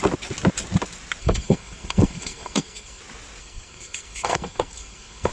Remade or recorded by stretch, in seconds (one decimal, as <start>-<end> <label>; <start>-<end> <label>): 0.0-1.2 recorded; 1.2-3.0 remade; 3.0-3.4 recorded; 3.4-5.3 remade